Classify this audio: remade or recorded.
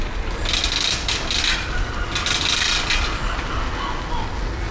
recorded